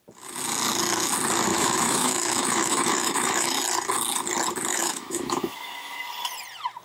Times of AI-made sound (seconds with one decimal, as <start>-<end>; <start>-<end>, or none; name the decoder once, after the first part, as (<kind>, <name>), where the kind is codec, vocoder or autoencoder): 1.5-3.6 (autoencoder, DAC-VAE); 4.7-6.0